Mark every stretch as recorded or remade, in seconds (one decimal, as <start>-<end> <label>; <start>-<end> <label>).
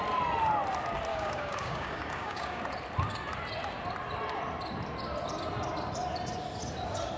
0.0-1.1 recorded; 1.1-2.6 remade; 2.6-7.2 recorded